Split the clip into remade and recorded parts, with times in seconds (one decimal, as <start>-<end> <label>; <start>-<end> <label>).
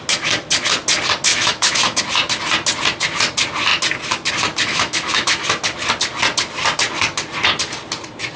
0.0-1.3 recorded; 1.3-2.0 remade; 2.0-4.7 recorded; 4.7-5.4 remade; 5.4-8.4 recorded